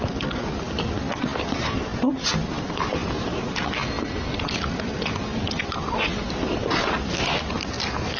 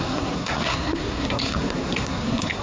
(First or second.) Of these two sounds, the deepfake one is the second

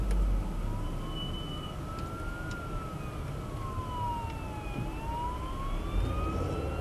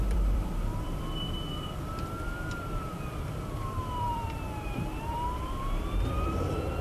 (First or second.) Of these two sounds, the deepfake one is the second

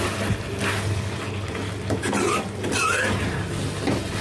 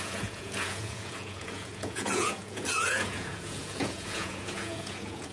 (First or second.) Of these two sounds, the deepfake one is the second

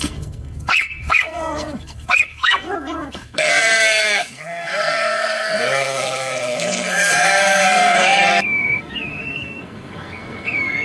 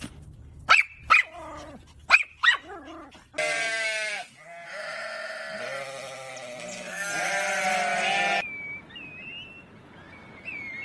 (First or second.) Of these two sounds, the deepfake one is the first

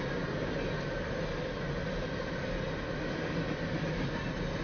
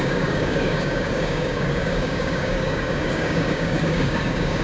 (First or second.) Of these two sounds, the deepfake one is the second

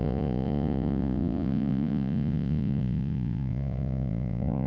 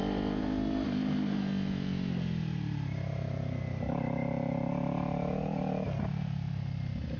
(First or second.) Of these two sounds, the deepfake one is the first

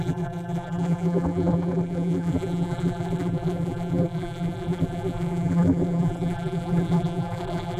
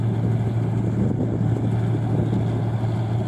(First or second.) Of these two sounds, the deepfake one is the first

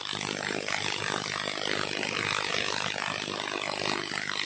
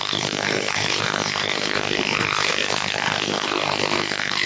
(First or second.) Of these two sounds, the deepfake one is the second